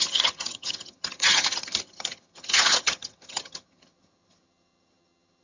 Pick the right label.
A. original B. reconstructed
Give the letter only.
B